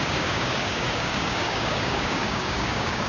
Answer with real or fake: fake